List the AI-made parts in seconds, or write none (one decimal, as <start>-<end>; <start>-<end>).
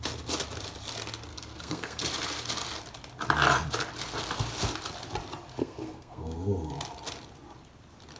1.3-2.1; 5.6-6.7